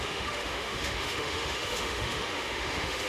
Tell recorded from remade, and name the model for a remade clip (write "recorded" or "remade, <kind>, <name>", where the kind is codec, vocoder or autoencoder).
remade, autoencoder, DAC-VAE